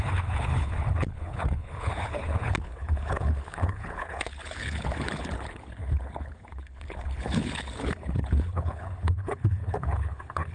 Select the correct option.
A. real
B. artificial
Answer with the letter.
B